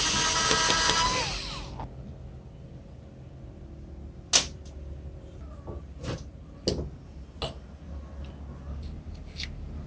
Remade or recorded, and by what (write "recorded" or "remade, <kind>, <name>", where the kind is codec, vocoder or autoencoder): recorded